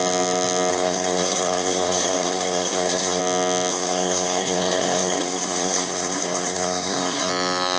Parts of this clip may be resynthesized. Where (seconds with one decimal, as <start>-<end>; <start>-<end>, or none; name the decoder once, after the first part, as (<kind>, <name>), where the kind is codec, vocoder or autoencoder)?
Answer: 0.7-3.2 (codec, SNAC); 3.7-7.3

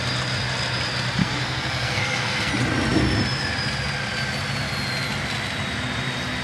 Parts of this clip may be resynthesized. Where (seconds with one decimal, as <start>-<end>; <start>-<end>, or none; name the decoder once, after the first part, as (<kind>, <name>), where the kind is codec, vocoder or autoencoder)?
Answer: 1.2-2.5 (codec, SNAC)

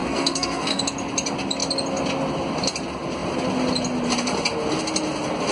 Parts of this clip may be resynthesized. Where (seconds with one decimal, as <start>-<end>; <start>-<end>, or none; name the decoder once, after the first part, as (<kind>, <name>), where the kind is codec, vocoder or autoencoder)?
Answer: 0.0-0.8 (codec, SNAC)

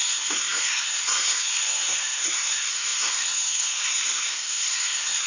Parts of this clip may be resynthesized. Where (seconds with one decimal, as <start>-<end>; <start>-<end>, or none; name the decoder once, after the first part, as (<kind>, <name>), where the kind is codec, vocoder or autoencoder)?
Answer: 0.0-5.3 (codec, SNAC)

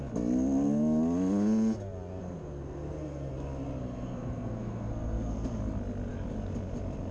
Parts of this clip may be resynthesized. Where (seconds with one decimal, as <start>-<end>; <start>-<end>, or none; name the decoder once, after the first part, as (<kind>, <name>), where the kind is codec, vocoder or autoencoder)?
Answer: 2.2-3.3 (codec, SNAC); 3.8-5.6

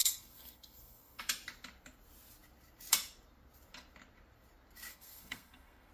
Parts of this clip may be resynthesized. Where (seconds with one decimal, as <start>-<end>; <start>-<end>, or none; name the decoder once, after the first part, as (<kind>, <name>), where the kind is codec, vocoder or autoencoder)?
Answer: 0.0-1.2 (codec, SNAC); 4.9-5.9

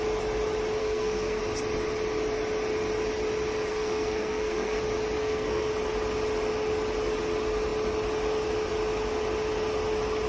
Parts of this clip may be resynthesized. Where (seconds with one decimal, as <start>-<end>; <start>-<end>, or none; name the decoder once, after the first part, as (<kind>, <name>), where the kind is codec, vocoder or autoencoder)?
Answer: 0.8-1.4 (codec, SNAC); 3.7-4.8; 5.2-5.7

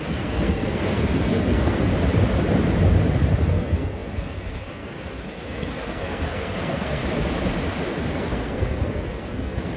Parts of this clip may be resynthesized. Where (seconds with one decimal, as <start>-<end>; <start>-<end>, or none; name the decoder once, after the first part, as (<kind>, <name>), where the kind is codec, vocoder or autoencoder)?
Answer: 0.0-1.9 (codec, SNAC); 3.3-7.0; 8.1-9.8